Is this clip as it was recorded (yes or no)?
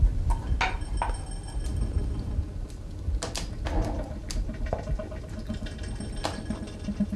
yes